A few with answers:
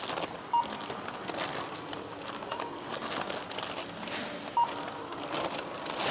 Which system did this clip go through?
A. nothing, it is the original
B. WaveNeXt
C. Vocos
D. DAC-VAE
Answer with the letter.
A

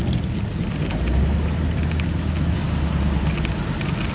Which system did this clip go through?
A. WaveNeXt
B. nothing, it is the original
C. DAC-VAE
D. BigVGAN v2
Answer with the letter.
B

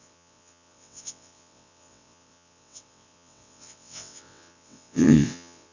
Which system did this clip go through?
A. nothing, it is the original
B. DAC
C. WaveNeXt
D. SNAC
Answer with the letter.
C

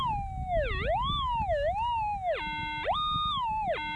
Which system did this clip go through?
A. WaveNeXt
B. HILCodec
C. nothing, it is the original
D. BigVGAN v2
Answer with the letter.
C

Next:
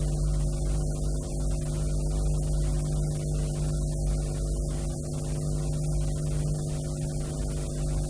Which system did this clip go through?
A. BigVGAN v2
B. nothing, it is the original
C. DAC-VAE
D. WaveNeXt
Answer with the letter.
B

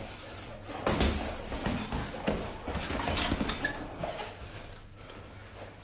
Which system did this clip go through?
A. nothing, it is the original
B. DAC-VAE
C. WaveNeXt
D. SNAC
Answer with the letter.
A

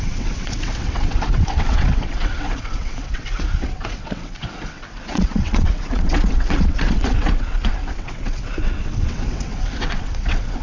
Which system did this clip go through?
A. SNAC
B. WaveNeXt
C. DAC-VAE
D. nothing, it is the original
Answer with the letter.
B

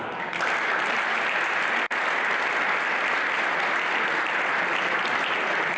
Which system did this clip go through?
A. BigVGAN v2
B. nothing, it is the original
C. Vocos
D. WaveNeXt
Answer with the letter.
B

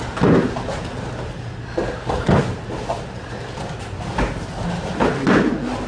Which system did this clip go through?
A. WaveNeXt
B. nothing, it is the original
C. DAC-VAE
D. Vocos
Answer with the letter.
B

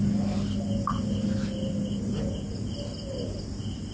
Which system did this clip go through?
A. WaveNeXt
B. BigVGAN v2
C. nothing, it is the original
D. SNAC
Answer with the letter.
C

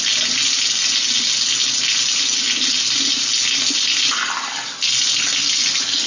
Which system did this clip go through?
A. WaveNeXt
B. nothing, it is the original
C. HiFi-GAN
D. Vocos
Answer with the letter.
B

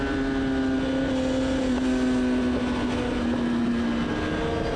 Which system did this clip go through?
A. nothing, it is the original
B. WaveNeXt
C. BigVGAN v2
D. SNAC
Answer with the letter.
A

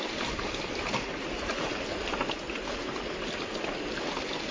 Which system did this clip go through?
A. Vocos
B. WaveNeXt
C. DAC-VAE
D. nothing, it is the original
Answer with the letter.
D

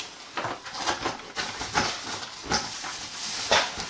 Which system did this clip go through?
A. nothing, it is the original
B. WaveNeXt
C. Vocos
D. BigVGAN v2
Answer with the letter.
A